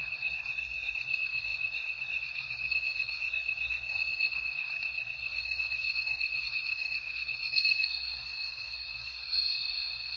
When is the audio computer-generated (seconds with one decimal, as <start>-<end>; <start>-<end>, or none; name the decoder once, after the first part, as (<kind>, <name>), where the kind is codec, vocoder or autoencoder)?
0.0-10.2 (codec, SNAC)